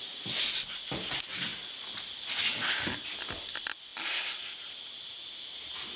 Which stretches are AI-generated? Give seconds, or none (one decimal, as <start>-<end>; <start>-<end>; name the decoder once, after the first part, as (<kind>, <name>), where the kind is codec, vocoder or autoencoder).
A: none